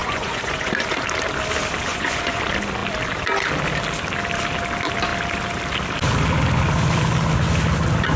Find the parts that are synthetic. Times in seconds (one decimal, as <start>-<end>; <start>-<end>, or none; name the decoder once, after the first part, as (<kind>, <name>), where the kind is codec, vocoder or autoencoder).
0.0-0.7 (vocoder, Vocos); 1.9-2.4